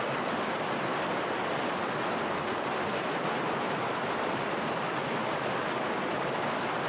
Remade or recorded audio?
recorded